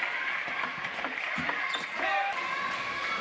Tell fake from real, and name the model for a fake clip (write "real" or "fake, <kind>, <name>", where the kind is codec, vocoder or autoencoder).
real